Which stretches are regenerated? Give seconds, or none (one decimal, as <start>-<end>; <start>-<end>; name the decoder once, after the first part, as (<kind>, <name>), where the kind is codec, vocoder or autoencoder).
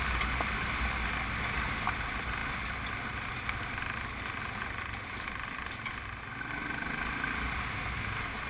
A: none